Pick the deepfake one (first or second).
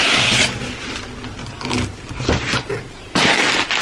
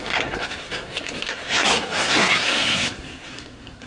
second